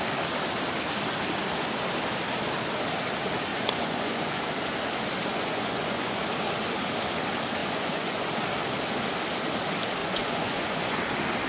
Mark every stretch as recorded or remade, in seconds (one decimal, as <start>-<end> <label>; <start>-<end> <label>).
0.0-3.5 recorded; 3.5-4.4 remade; 4.4-5.3 recorded; 5.3-6.2 remade; 6.2-7.6 recorded; 7.6-8.3 remade; 8.3-10.0 recorded; 10.0-11.0 remade; 11.0-11.5 recorded